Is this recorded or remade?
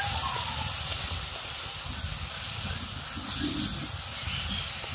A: recorded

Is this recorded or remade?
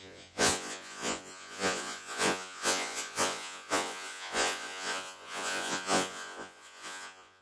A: remade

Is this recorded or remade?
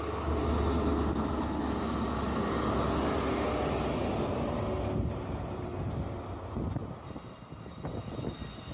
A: recorded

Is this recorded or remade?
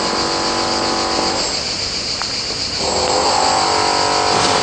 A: recorded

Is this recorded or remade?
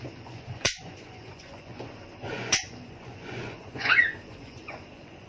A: remade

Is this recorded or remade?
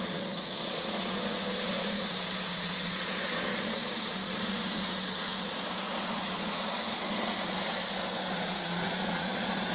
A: remade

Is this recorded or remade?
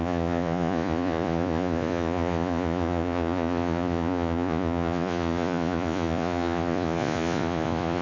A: remade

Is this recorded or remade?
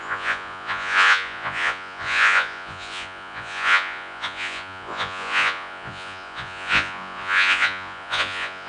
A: remade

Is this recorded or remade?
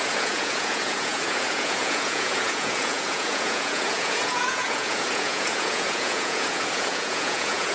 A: remade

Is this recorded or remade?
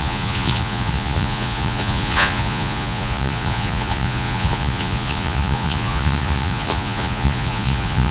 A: remade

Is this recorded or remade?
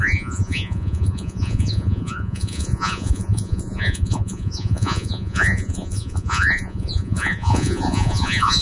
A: remade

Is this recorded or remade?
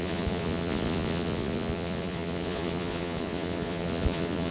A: remade